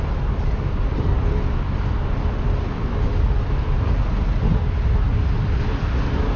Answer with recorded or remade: recorded